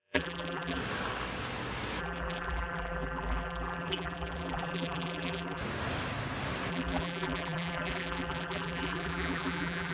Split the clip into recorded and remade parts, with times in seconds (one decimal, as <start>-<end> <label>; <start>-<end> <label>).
0.0-0.8 remade; 0.8-2.0 recorded; 2.0-5.6 remade; 5.6-6.7 recorded; 6.7-9.9 remade